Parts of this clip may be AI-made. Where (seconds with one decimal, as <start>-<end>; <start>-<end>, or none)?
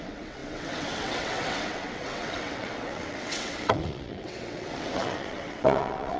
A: 0.0-6.2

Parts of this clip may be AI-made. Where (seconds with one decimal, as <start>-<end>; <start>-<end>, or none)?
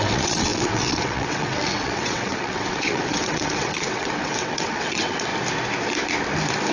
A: 0.0-5.3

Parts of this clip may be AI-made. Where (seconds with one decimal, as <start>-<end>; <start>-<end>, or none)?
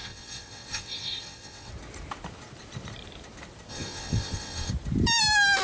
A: 0.0-1.7; 3.7-4.7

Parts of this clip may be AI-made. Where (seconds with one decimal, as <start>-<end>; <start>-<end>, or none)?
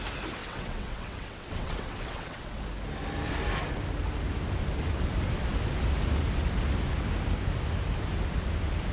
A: 0.4-2.6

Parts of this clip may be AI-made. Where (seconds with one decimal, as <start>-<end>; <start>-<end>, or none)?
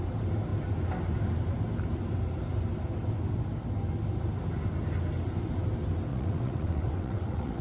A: 6.1-7.6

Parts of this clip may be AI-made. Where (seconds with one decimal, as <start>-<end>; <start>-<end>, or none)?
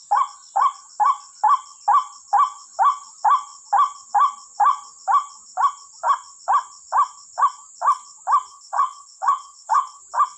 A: 8.5-10.0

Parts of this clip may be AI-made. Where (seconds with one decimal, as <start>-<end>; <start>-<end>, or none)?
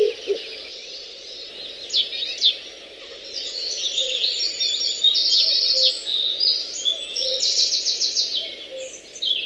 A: 0.7-1.5; 3.0-4.4; 7.1-7.7